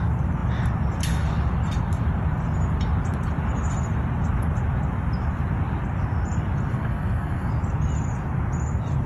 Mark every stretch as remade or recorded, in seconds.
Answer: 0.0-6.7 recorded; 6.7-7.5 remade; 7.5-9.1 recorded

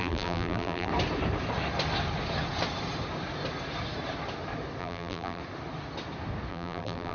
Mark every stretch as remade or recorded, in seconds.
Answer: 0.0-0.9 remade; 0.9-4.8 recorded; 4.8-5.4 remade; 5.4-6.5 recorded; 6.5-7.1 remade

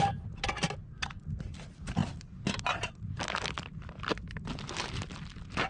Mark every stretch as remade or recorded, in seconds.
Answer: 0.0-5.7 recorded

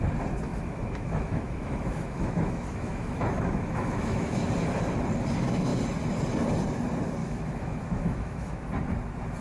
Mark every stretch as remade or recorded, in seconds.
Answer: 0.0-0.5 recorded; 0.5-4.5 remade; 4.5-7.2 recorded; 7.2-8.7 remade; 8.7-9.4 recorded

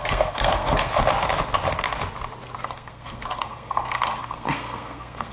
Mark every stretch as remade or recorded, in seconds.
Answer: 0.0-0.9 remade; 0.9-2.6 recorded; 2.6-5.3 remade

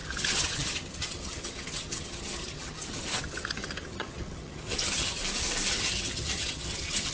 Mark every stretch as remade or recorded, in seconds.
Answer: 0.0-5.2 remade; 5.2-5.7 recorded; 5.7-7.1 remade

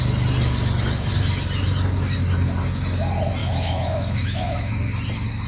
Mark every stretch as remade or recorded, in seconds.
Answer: 0.0-3.4 recorded; 3.4-4.7 remade; 4.7-5.5 recorded

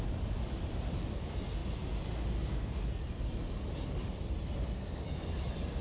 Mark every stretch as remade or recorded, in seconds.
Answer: 0.0-1.6 remade; 1.6-2.8 recorded; 2.8-3.4 remade; 3.4-4.0 recorded; 4.0-5.8 remade